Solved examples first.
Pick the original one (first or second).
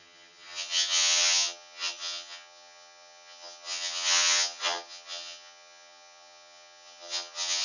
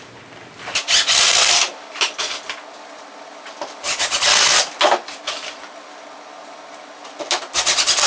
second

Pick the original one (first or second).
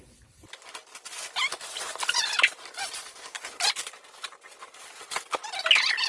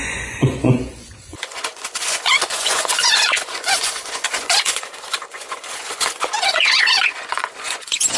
first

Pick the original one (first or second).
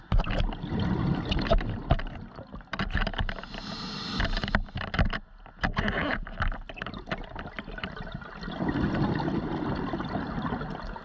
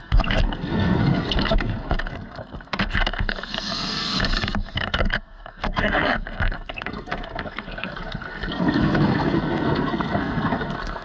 first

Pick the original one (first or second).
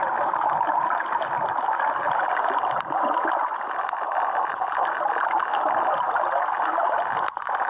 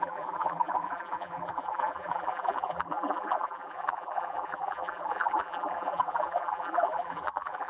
first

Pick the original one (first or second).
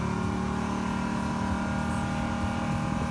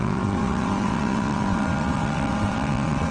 first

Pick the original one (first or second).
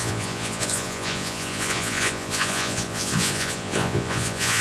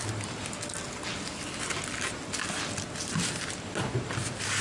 second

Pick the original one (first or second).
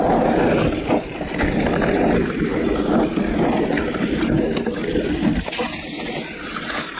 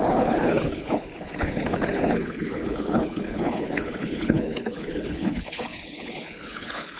first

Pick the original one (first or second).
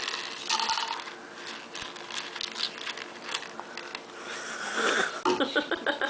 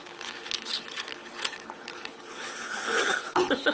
first